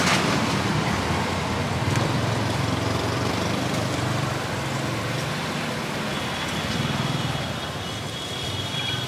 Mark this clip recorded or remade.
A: remade